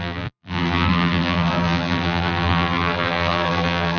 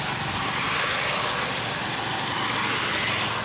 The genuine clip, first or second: second